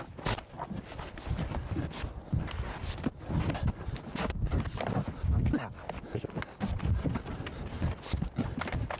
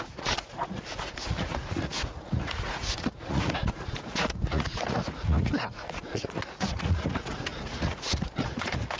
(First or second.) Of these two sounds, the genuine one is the first